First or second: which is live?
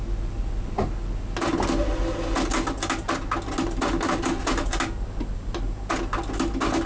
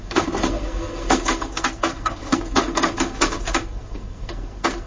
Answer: first